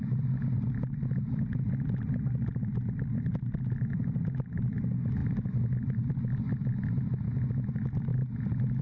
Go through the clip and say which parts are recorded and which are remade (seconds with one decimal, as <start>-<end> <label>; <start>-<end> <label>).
0.0-8.8 recorded